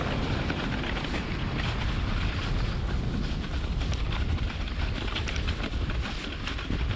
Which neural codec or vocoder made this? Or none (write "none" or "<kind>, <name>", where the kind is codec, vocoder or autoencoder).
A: none